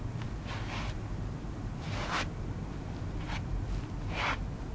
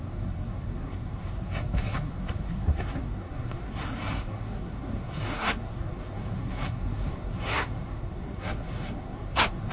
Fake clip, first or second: second